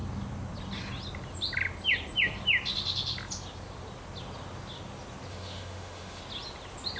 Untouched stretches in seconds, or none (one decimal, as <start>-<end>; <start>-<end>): 0.0-5.3; 6.2-7.0

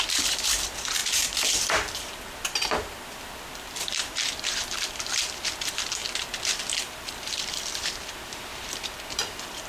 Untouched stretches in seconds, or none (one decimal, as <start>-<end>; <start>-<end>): 6.0-6.7

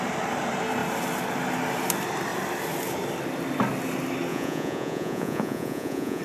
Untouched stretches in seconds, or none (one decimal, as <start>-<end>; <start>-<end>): 0.0-4.3

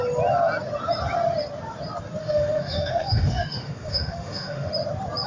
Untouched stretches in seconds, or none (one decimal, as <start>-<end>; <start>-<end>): 0.0-2.2; 4.7-5.3